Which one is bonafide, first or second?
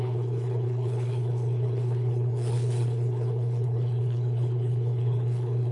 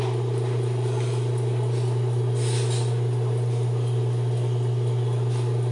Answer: second